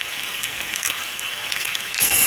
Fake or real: fake